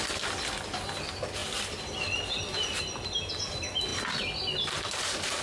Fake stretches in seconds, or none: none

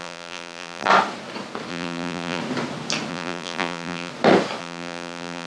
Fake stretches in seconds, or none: 0.0-0.9 (vocoder, BigVGAN v2); 1.7-2.4; 3.1-4.1; 4.6-5.5

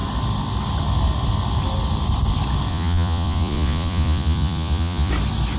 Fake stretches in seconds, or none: 2.7-5.1 (vocoder, Vocos)

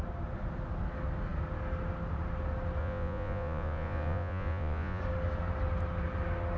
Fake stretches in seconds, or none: 2.8-5.0 (vocoder, Vocos)

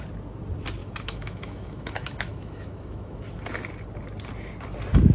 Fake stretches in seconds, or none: 0.8-3.2 (autoencoder, DAC-VAE)

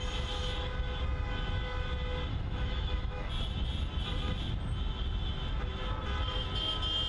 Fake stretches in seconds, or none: 2.3-3.3 (autoencoder, DAC-VAE)

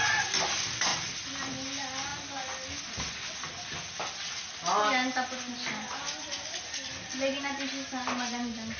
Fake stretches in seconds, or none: none